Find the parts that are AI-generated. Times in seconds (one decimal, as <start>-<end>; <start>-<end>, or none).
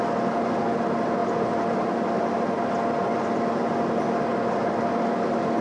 none